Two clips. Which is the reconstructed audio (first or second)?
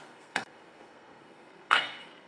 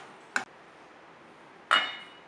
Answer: first